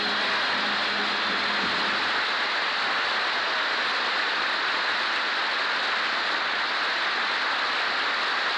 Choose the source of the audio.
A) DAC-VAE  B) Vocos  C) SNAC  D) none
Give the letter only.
D